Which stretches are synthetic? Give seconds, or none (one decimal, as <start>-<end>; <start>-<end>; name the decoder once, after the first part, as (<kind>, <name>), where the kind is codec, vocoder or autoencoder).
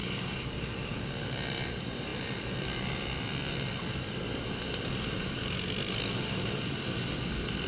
0.0-1.0 (codec, DAC)